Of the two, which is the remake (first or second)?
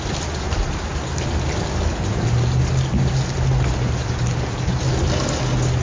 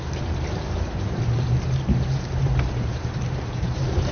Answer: second